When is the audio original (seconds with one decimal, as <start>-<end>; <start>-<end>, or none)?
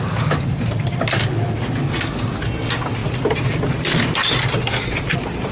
0.0-5.5